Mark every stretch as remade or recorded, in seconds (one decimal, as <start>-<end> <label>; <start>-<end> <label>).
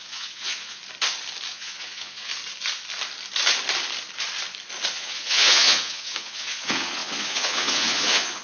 0.0-0.8 remade; 0.8-1.5 recorded; 1.5-2.3 remade; 2.3-4.9 recorded; 4.9-8.4 remade